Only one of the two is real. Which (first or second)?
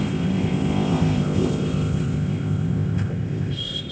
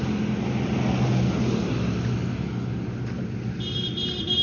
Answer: second